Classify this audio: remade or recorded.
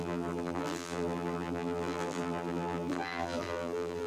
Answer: remade